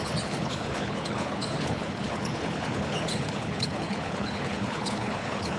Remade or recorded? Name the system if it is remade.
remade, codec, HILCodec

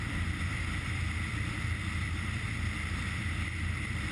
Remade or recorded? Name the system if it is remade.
remade, vocoder, BigVGAN v2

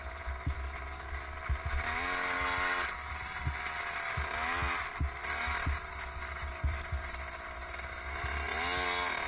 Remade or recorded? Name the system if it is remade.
recorded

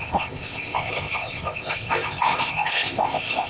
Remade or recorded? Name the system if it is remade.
remade, codec, ZipCodec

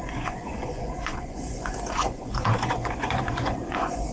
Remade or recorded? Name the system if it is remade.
remade, vocoder, Vocos